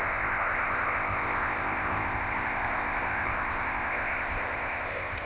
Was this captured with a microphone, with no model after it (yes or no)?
no